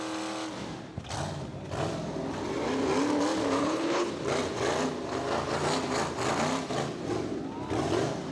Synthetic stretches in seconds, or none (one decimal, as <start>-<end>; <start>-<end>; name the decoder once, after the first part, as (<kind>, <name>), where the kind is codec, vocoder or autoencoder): 3.6-4.1 (codec, HILCodec)